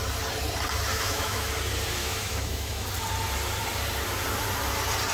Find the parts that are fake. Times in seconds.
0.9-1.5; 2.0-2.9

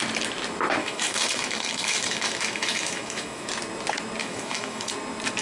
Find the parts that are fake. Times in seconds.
0.8-3.5; 4.2-4.9